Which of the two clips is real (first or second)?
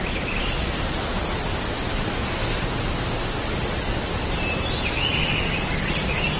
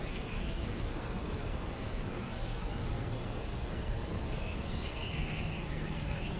first